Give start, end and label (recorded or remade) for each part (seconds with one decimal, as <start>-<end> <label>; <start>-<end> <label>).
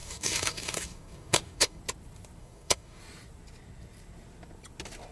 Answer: 0.0-1.8 remade; 1.8-2.4 recorded; 2.4-3.0 remade; 3.0-5.1 recorded